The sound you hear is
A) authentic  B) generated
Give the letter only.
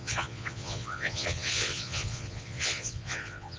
B